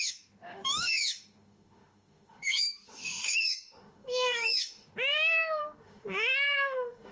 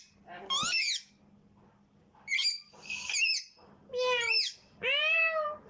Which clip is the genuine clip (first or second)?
second